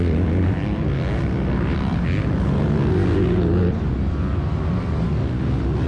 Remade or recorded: recorded